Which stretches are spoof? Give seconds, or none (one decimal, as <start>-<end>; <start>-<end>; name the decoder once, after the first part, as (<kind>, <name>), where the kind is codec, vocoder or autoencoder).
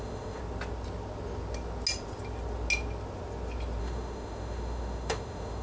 0.0-0.4 (autoencoder, DAC-VAE); 3.8-5.6